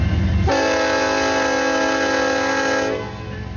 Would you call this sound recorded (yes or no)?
yes